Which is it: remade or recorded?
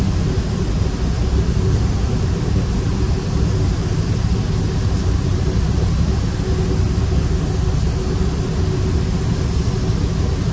recorded